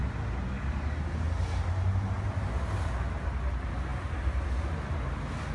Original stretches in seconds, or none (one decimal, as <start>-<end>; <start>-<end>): 0.0-3.9; 4.5-5.5